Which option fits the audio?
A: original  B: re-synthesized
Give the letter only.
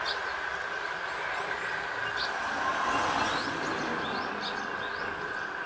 A